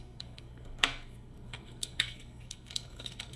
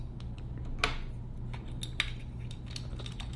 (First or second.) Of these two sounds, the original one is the second